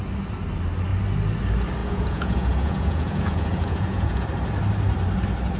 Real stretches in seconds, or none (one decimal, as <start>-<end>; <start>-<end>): 0.0-1.8; 4.2-5.6

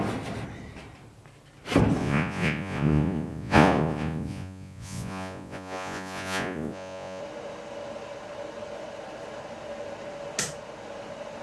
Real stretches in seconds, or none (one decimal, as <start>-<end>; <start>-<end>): 0.0-2.0; 7.2-11.4